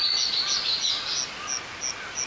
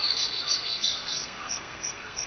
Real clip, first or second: first